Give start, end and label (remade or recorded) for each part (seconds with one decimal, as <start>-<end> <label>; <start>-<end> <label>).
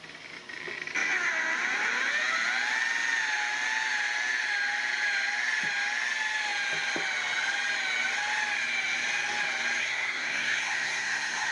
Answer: 0.0-9.8 recorded; 9.8-11.5 remade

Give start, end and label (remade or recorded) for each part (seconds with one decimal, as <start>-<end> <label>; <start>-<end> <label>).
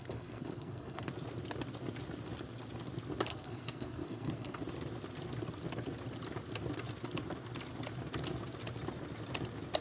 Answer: 0.0-1.1 remade; 1.1-3.3 recorded; 3.3-4.6 remade; 4.6-9.8 recorded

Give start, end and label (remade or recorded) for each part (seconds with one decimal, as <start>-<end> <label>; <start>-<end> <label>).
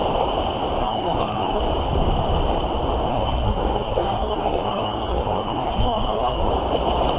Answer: 0.0-0.8 recorded; 0.8-1.6 remade; 1.6-3.1 recorded; 3.1-6.5 remade; 6.5-7.2 recorded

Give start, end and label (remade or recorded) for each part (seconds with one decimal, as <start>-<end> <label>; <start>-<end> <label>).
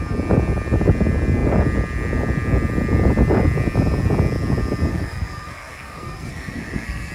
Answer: 0.0-4.9 recorded; 4.9-7.1 remade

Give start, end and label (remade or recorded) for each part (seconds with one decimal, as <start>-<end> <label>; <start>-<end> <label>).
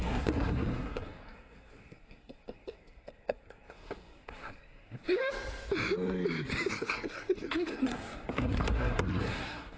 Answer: 0.0-5.2 remade; 5.2-6.7 recorded; 6.7-9.8 remade